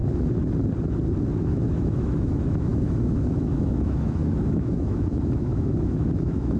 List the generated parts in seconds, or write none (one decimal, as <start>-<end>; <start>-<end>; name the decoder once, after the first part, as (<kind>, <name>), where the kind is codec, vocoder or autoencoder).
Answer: 1.4-6.6 (autoencoder, DAC-VAE)